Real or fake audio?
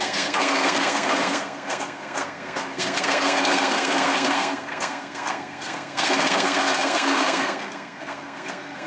fake